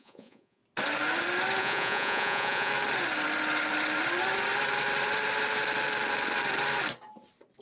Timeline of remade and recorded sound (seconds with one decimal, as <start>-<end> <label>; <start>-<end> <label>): 0.0-0.6 remade; 0.6-1.6 recorded; 1.6-2.7 remade; 2.7-7.6 recorded